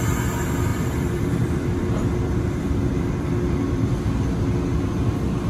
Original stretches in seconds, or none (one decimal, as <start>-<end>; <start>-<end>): 0.0-0.7; 4.0-5.5